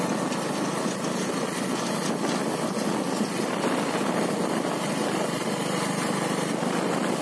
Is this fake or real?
real